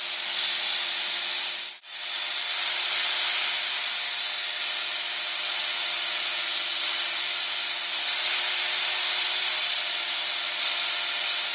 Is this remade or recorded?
recorded